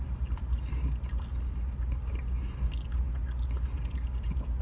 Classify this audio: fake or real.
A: real